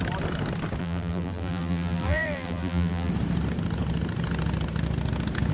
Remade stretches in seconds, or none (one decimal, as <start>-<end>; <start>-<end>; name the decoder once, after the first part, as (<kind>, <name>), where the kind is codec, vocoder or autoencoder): 0.8-3.1 (vocoder, BigVGAN v2)

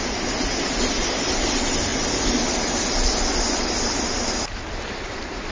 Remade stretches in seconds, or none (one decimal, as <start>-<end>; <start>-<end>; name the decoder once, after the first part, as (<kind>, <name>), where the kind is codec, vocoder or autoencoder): none